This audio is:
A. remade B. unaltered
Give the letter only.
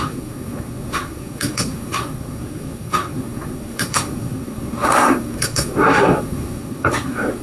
A